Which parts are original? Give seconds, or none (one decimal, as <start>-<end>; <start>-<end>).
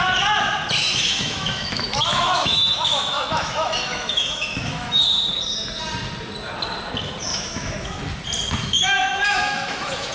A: 0.0-0.8; 5.0-7.3; 8.0-8.6